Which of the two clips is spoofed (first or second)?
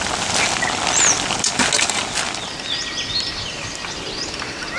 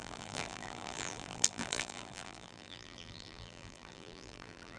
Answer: second